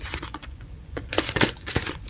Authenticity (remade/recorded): remade